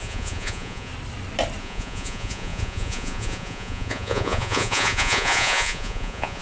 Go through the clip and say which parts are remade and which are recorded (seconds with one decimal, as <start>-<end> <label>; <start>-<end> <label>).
0.0-0.9 remade; 0.9-1.6 recorded; 1.6-6.4 remade

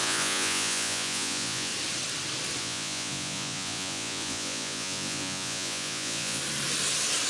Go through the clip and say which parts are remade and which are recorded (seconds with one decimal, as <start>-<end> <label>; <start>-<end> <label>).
0.0-1.7 remade; 1.7-2.6 recorded; 2.6-6.4 remade; 6.4-7.3 recorded

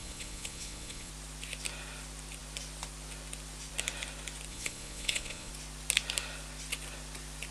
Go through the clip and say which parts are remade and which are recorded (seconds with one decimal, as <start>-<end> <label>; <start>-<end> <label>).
0.0-1.1 remade; 1.1-4.5 recorded; 4.5-5.5 remade; 5.5-7.5 recorded

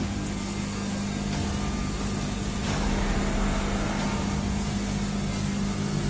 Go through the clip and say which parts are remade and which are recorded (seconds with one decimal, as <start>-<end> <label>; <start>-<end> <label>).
0.0-6.1 recorded

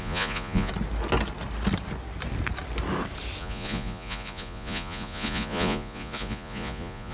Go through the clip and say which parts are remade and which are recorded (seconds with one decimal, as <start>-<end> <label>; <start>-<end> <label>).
0.0-0.7 remade; 0.7-3.4 recorded; 3.4-7.1 remade

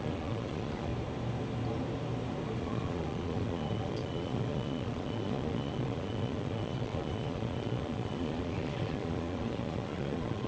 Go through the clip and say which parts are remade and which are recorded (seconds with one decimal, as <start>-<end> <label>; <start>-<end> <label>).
0.0-0.9 remade; 0.9-2.6 recorded; 2.6-10.5 remade

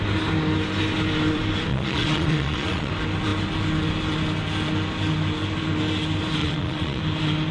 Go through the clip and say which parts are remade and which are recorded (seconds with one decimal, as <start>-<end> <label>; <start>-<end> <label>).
0.0-1.7 recorded; 1.7-2.9 remade; 2.9-6.4 recorded; 6.4-7.0 remade; 7.0-7.5 recorded